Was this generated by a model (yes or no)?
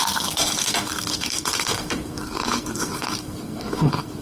yes